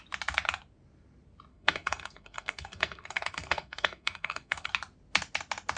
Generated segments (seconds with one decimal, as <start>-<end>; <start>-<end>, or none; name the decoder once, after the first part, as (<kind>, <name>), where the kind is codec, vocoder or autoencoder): 1.5-4.7 (codec, SNAC)